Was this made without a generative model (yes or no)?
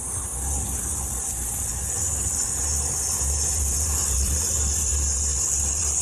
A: no